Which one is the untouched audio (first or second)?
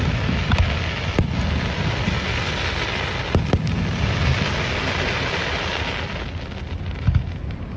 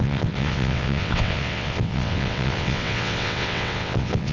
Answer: first